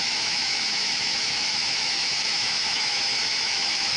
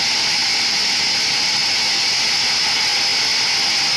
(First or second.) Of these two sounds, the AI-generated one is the first